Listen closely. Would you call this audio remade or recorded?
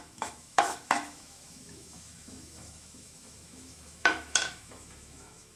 remade